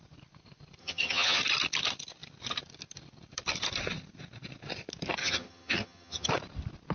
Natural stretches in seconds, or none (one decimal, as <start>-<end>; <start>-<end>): 0.0-0.8; 1.4-5.2; 6.3-6.9